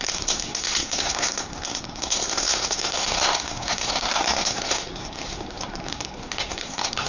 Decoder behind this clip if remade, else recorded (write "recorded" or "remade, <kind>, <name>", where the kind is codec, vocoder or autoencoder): remade, codec, SNAC